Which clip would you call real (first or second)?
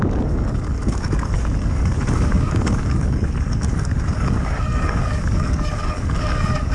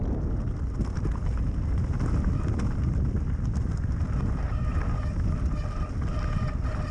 second